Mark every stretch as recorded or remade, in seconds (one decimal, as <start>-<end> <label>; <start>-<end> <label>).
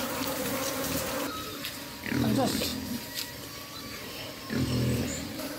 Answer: 0.0-5.6 remade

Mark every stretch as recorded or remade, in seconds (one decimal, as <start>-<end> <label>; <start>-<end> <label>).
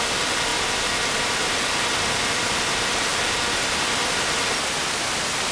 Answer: 0.0-5.5 recorded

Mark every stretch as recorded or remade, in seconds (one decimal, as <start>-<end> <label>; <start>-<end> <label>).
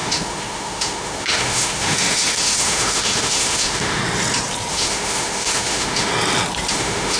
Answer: 0.0-4.0 remade; 4.0-4.7 recorded; 4.7-6.1 remade; 6.1-6.7 recorded; 6.7-7.2 remade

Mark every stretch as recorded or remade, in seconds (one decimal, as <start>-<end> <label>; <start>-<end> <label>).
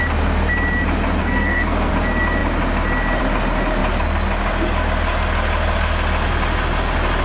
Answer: 0.0-1.2 recorded; 1.2-1.9 remade; 1.9-7.2 recorded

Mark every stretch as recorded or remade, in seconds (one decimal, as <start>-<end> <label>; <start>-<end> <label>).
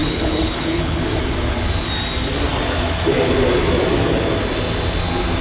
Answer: 0.0-1.0 remade; 1.0-5.4 recorded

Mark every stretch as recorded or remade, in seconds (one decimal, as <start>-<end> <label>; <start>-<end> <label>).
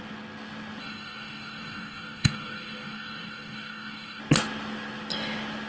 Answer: 0.0-0.8 recorded; 0.8-4.2 remade; 4.2-5.7 recorded